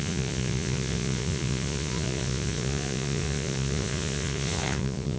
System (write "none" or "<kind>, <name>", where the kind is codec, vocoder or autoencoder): vocoder, Vocos